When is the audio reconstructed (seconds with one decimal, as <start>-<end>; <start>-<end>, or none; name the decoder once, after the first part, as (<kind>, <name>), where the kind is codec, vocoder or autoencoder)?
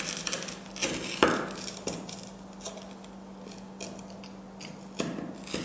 none